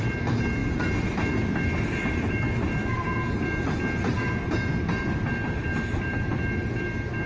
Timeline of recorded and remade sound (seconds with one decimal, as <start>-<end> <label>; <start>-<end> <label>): 0.0-7.3 recorded